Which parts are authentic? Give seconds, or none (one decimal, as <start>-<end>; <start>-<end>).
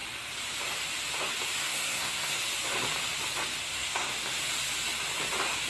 0.0-1.6; 2.4-3.6; 4.1-5.7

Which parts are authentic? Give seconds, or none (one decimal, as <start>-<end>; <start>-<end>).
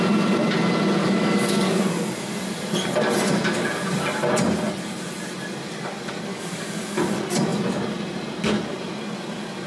0.0-1.0; 1.8-6.3; 7.0-9.7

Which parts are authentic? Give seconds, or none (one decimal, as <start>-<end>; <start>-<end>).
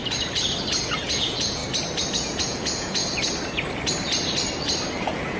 0.0-1.0; 1.6-2.1; 3.0-5.0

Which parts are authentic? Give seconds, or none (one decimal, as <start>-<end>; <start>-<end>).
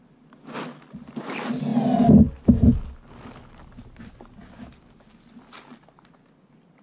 0.0-6.8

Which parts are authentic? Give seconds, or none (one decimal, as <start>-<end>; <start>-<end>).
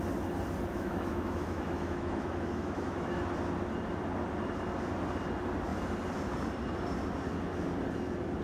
0.0-0.7; 3.2-8.4